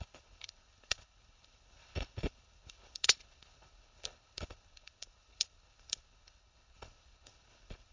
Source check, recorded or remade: remade